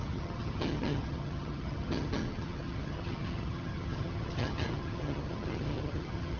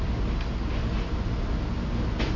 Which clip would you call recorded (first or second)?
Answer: second